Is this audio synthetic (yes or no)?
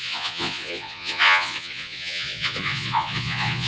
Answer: yes